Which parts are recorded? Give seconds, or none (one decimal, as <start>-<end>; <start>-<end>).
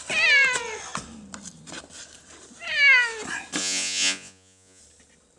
0.0-3.6; 4.8-5.4